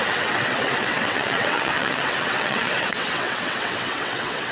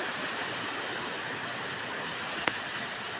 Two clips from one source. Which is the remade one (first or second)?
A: first